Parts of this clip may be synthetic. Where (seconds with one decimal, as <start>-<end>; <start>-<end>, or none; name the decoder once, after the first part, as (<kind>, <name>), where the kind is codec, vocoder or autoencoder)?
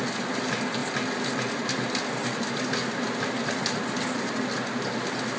none